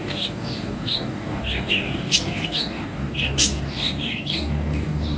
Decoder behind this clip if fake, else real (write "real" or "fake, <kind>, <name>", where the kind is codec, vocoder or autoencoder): fake, codec, DAC